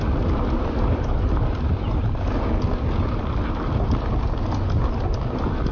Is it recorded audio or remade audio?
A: recorded